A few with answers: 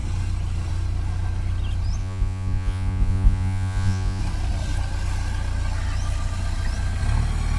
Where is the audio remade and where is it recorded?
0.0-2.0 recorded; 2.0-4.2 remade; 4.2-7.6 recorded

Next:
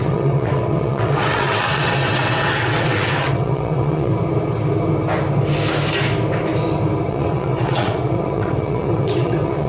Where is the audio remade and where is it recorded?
0.0-4.1 remade; 4.1-7.1 recorded; 7.1-9.7 remade

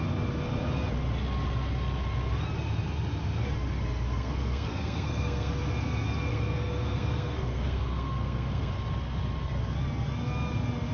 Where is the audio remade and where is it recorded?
0.0-4.1 recorded; 4.1-5.5 remade; 5.5-6.3 recorded; 6.3-8.7 remade; 8.7-10.9 recorded

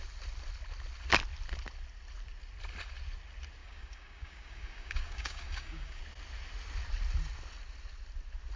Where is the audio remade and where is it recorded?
0.0-3.6 recorded; 3.6-6.0 remade; 6.0-8.6 recorded